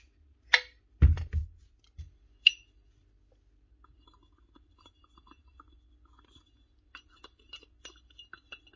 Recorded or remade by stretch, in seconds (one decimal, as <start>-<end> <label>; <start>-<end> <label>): 0.0-8.8 recorded